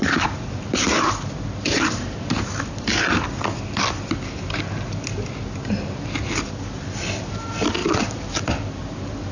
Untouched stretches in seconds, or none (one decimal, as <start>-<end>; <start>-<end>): 2.5-7.8; 8.4-9.3